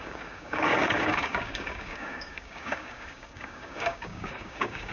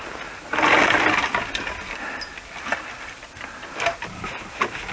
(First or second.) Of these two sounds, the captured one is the second